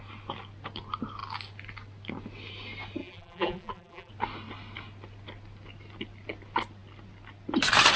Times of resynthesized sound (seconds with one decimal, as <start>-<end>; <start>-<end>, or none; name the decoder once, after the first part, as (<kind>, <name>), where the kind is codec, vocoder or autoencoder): 3.0-4.1 (vocoder, BigVGAN v2)